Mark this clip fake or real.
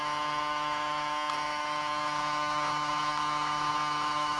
fake